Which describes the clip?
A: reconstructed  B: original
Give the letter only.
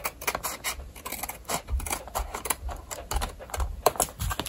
B